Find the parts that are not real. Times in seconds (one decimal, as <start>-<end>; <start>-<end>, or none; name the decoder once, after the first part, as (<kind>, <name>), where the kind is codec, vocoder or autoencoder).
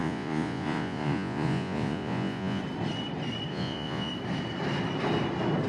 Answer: 0.0-2.6 (vocoder, Vocos); 3.5-4.1